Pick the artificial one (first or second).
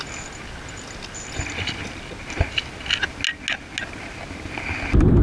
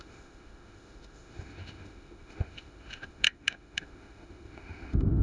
second